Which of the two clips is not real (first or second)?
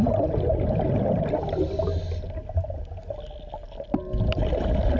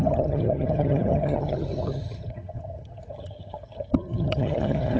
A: second